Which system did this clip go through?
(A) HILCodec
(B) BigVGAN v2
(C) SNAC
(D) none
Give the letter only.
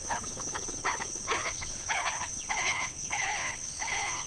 A